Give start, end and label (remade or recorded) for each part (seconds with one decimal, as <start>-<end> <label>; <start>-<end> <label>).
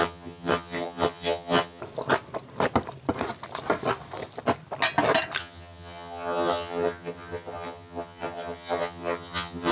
0.0-1.8 remade; 1.8-5.4 recorded; 5.4-9.7 remade